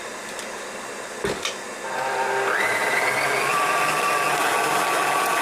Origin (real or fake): real